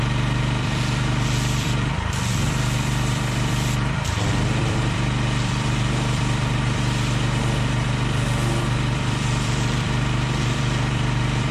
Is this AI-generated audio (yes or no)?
yes